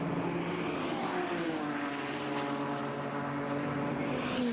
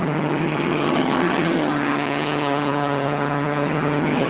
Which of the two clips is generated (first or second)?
second